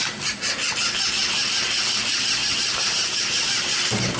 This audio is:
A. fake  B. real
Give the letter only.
B